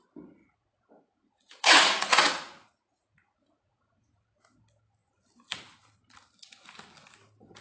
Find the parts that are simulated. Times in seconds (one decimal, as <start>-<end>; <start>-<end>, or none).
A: 0.4-4.2